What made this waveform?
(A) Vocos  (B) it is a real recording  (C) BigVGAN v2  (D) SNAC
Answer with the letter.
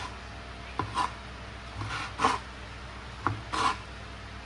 B